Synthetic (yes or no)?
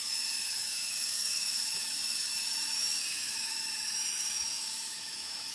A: yes